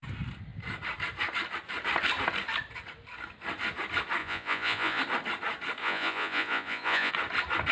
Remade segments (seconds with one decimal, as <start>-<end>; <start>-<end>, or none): 4.2-5.0; 5.8-7.1